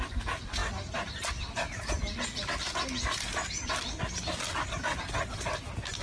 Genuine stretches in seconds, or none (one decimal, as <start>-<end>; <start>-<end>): 0.0-6.0